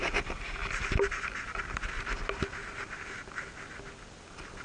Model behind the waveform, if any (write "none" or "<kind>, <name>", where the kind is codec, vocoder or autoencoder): none